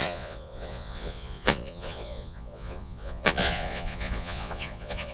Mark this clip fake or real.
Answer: fake